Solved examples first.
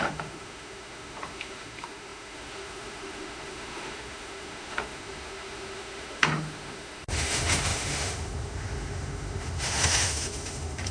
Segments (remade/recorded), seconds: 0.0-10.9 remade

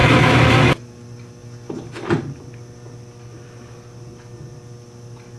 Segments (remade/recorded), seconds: 0.0-0.5 remade; 0.5-5.4 recorded

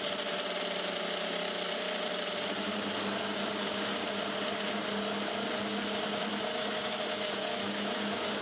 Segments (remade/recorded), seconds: 0.0-6.3 recorded; 6.3-8.4 remade

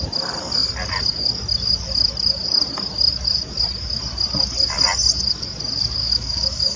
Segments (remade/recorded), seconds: 0.0-6.0 recorded; 6.0-6.8 remade

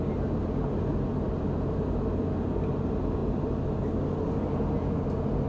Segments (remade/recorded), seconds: 0.0-5.5 recorded

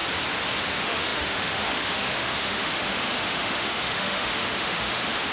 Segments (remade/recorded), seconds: 0.0-0.7 recorded; 0.7-5.3 remade

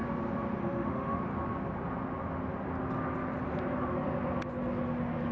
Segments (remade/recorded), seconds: 0.0-0.6 recorded; 0.6-1.2 remade; 1.2-5.3 recorded

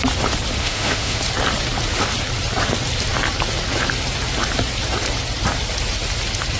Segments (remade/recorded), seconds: 0.0-0.6 recorded; 0.6-1.2 remade; 1.2-6.6 recorded